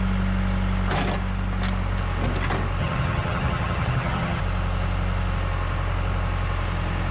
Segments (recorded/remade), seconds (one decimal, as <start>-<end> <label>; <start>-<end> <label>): 0.0-2.8 recorded; 2.8-4.4 remade; 4.4-7.1 recorded